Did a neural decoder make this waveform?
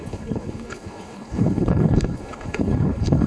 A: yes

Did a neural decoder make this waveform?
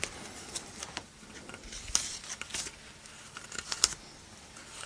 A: no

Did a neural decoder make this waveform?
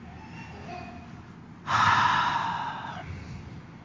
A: no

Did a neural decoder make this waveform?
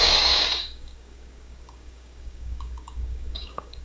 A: yes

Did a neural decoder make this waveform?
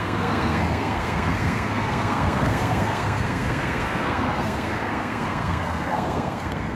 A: yes